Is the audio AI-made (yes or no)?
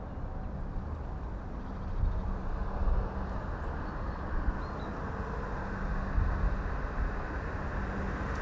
no